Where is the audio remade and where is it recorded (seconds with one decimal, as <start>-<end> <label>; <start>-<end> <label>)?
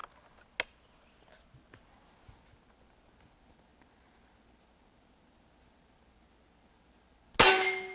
0.0-7.9 recorded